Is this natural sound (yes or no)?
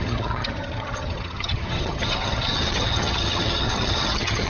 no